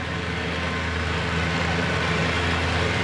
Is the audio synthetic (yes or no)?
no